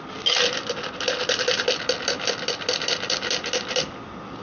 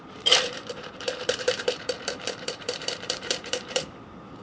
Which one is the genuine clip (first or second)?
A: first